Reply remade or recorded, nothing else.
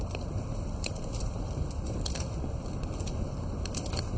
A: recorded